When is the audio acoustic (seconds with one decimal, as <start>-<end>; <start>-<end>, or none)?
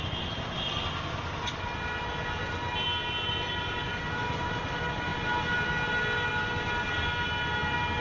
0.0-8.0